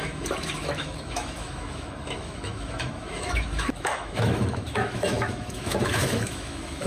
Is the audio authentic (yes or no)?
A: no